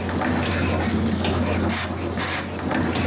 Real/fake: real